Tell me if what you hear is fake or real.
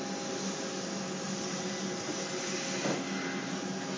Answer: real